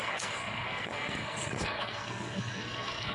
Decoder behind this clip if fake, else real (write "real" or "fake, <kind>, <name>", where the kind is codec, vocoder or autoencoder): fake, codec, SNAC